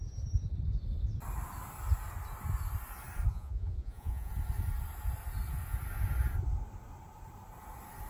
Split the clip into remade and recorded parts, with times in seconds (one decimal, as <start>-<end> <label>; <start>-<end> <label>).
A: 0.0-3.3 recorded; 3.3-4.3 remade; 4.3-8.1 recorded